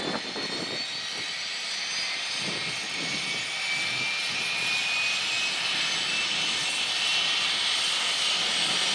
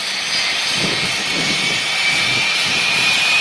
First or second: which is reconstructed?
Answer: second